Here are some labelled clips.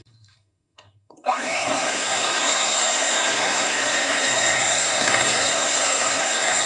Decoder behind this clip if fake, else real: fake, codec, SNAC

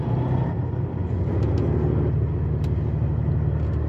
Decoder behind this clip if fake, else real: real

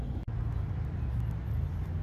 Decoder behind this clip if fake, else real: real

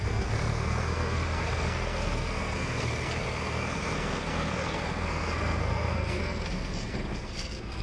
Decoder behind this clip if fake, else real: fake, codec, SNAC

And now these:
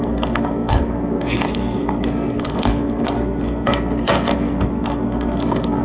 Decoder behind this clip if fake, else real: fake, codec, SNAC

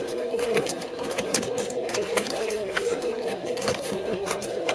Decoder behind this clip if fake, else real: fake, codec, SNAC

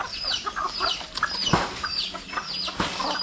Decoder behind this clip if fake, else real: real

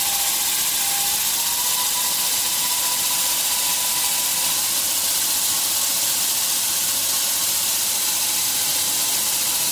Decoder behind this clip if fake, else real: real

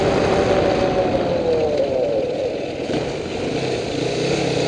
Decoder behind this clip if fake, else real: real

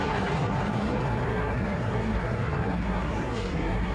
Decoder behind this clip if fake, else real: fake, codec, SNAC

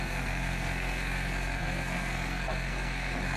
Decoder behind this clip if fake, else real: fake, codec, SNAC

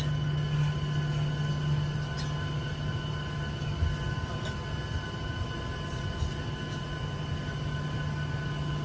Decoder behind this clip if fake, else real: real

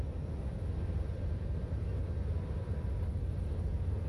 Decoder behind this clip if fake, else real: real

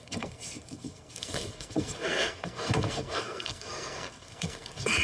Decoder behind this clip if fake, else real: fake, codec, SNAC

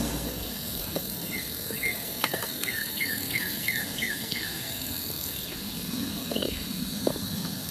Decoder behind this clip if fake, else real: fake, codec, SNAC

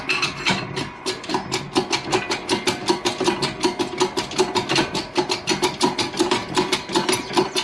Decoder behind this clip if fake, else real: real